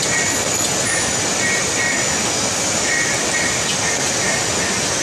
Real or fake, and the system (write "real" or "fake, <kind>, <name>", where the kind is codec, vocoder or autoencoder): real